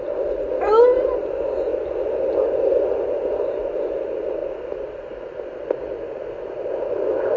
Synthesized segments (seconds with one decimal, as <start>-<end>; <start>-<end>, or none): 4.4-5.5